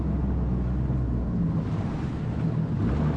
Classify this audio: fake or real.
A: real